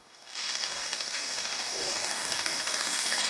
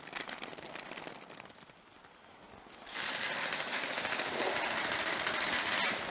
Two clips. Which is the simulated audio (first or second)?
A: first